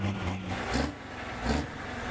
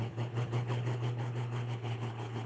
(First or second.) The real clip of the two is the first